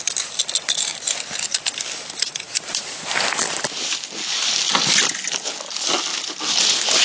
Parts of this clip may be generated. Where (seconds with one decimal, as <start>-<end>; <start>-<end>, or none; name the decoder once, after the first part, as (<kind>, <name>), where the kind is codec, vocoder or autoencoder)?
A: none